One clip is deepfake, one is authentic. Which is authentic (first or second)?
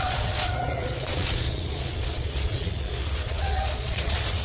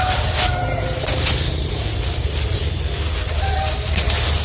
second